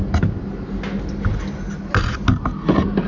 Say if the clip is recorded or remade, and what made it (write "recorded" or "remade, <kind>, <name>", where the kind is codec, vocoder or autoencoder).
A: recorded